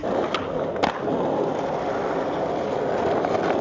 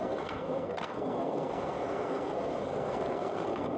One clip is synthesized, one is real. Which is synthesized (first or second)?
second